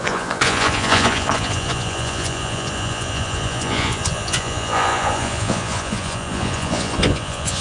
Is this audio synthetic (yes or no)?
yes